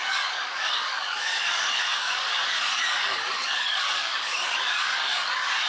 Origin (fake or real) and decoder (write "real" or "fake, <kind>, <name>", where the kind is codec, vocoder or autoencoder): fake, codec, DAC